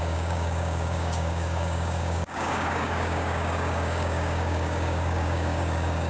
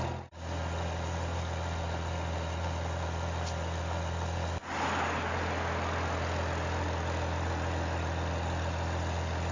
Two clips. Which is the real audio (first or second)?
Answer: second